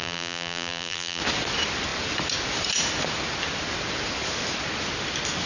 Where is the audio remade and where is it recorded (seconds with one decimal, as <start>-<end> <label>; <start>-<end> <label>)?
0.0-1.2 remade; 1.2-5.5 recorded